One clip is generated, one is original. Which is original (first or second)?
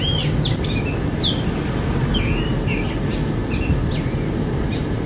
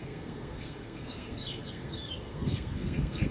first